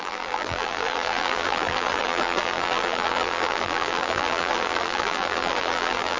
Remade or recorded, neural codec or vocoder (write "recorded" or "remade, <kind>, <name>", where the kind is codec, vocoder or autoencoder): remade, vocoder, BigVGAN v2